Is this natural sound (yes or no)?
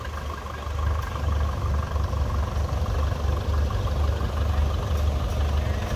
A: yes